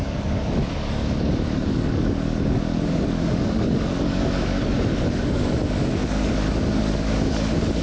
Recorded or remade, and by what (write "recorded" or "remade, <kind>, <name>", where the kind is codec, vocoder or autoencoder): remade, codec, DAC